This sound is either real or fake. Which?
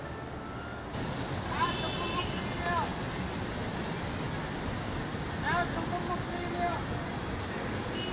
real